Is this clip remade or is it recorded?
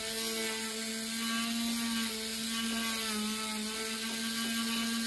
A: recorded